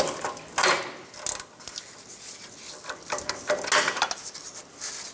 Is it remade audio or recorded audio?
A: recorded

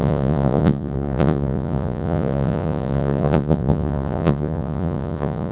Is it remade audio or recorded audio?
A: remade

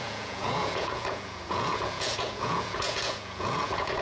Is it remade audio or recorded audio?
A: remade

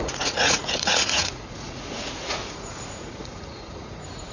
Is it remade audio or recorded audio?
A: remade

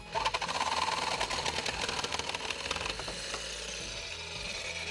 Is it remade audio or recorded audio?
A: recorded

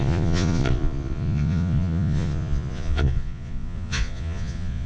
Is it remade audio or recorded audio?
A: remade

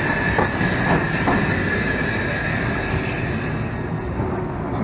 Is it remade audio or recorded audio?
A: recorded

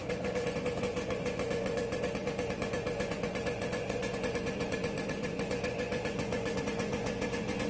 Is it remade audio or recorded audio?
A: remade